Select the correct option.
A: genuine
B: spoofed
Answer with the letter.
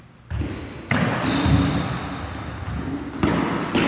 A